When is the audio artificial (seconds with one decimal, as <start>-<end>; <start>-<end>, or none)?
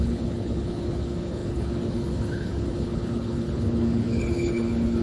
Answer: 0.0-5.0